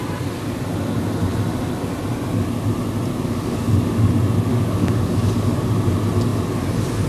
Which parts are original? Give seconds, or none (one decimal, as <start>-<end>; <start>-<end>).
0.0-3.1; 4.1-4.5; 5.6-7.1